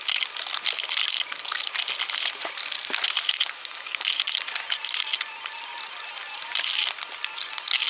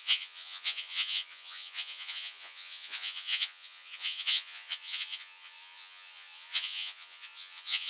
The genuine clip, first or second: first